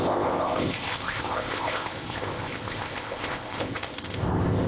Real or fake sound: fake